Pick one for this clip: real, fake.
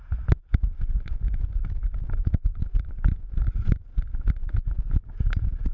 real